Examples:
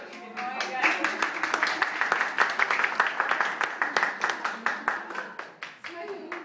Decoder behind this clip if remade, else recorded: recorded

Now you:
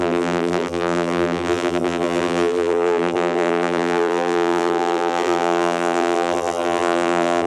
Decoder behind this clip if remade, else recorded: remade, vocoder, BigVGAN v2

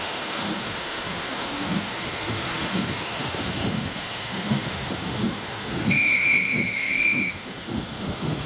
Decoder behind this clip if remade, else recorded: remade, autoencoder, DAC-VAE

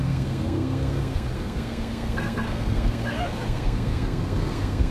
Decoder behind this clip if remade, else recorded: remade, codec, SNAC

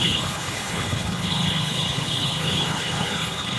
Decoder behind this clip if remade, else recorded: remade, codec, HILCodec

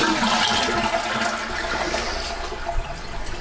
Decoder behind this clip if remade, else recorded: recorded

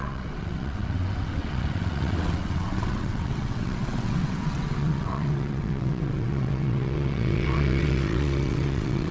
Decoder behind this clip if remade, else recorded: remade, vocoder, WaveNeXt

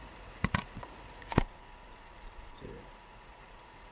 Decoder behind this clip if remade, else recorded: remade, vocoder, Vocos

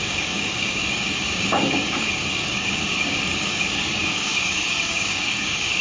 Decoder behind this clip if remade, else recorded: remade, codec, DAC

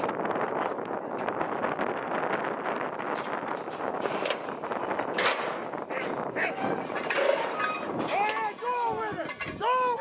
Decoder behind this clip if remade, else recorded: recorded